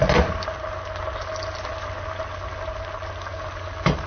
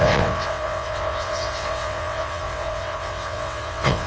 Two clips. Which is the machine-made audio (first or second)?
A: second